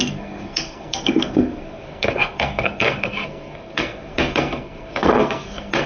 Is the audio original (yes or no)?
no